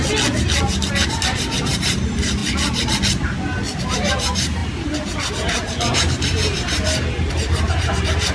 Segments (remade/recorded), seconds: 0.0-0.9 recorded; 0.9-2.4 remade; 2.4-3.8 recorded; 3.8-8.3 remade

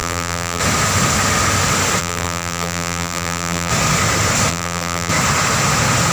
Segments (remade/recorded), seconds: 0.0-0.6 remade; 0.6-2.0 recorded; 2.0-3.7 remade; 3.7-4.5 recorded; 4.5-5.1 remade; 5.1-6.1 recorded

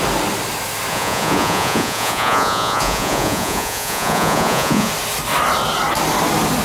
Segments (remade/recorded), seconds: 0.0-0.9 recorded; 0.9-4.9 remade; 4.9-6.6 recorded

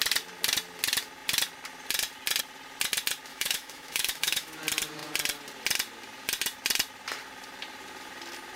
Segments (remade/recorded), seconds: 0.0-3.3 recorded; 3.3-4.6 remade; 4.6-8.6 recorded

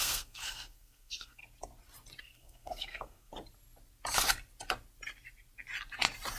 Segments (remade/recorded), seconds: 0.0-1.4 remade; 1.4-2.2 recorded; 2.2-3.3 remade; 3.3-6.4 recorded